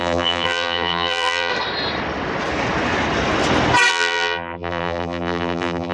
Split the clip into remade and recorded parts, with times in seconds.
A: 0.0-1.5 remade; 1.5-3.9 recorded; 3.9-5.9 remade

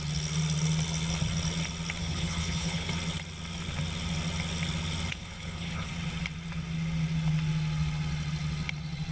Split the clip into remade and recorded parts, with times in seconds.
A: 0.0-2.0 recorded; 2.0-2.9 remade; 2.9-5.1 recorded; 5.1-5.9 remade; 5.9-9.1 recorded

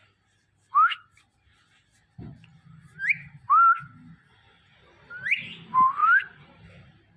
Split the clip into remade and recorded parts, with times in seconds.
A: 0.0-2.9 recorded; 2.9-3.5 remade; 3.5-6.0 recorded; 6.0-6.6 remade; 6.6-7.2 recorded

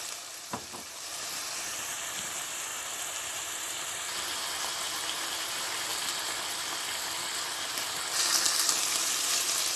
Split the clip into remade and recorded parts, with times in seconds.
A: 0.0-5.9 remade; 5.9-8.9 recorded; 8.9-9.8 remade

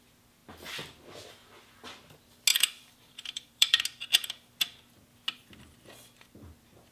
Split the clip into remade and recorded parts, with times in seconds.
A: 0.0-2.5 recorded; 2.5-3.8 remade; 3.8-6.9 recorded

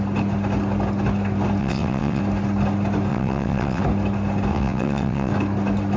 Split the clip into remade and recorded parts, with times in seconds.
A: 0.0-1.6 recorded; 1.6-2.2 remade; 2.2-3.1 recorded; 3.1-3.8 remade; 3.8-4.5 recorded; 4.5-5.3 remade; 5.3-6.0 recorded

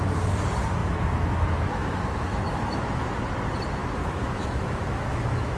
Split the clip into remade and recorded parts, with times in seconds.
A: 0.0-0.8 recorded; 0.8-3.1 remade; 3.1-3.8 recorded; 3.8-5.6 remade